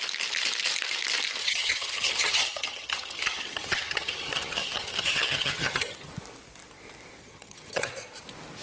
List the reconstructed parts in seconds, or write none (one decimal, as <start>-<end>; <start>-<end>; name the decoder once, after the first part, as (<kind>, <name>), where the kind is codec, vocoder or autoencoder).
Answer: 1.4-6.1 (vocoder, HiFi-GAN); 7.2-7.9